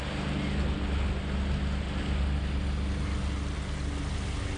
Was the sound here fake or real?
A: real